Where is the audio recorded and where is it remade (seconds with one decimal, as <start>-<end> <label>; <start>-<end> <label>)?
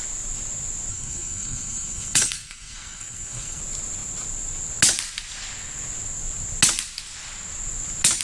0.0-0.9 recorded; 0.9-3.6 remade; 3.6-8.2 recorded